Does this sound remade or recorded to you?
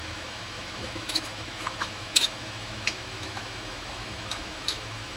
remade